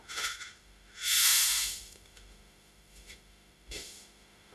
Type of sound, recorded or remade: remade